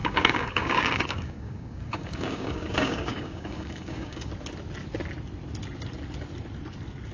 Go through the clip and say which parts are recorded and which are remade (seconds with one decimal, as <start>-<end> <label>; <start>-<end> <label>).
0.0-4.3 remade; 4.3-7.1 recorded